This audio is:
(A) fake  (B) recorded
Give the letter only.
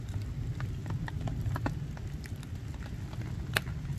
B